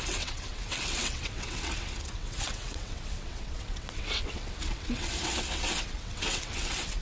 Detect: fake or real fake